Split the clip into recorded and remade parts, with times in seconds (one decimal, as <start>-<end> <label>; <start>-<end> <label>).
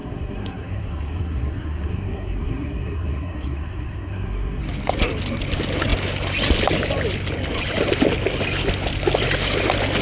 0.0-4.6 remade; 4.6-10.0 recorded